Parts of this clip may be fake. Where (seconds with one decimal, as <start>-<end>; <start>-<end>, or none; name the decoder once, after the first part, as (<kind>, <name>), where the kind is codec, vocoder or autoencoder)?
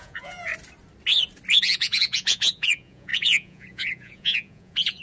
0.0-0.5 (vocoder, Vocos); 1.6-5.0